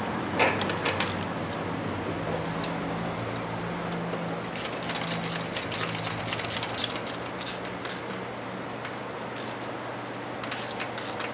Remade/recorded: recorded